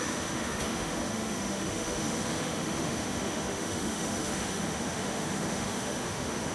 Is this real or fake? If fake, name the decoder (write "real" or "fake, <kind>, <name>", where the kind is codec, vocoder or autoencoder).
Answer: fake, autoencoder, DAC-VAE